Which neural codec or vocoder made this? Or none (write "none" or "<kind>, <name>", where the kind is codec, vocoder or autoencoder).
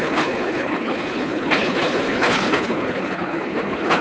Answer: codec, HILCodec